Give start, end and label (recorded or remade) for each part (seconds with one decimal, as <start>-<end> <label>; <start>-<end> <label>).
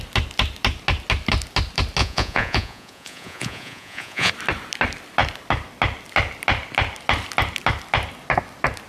0.0-2.0 recorded; 2.0-4.3 remade; 4.3-8.9 recorded